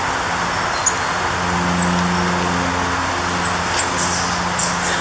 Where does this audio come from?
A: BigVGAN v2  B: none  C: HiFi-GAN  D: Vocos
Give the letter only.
B